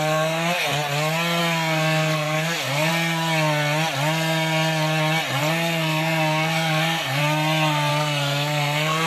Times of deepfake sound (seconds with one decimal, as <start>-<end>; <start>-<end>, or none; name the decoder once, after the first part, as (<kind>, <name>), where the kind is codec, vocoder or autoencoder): 0.0-0.7 (codec, SNAC); 1.4-2.9; 5.4-7.2; 7.9-9.1